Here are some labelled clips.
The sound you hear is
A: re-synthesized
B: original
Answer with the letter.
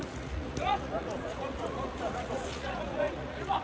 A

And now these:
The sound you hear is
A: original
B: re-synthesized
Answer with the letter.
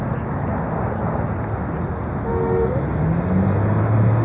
A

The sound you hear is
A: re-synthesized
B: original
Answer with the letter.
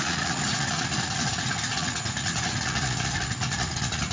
A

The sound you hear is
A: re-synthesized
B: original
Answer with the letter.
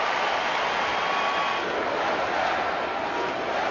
B